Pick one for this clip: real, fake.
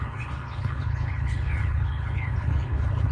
fake